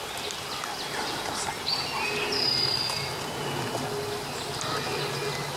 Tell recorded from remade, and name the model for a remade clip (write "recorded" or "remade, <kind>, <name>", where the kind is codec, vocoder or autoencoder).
recorded